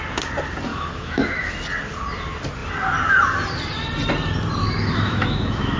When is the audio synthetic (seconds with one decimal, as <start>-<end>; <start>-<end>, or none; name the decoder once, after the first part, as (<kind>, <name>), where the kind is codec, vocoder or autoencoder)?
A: 0.7-1.5 (autoencoder, DAC-VAE); 4.6-5.8